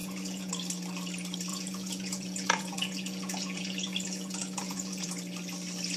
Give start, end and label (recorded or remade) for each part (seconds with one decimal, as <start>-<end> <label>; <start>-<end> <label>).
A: 0.0-0.5 remade; 0.5-1.5 recorded; 1.5-5.1 remade; 5.1-6.0 recorded